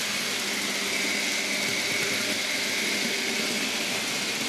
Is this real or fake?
real